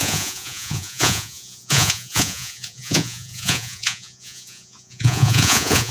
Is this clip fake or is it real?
fake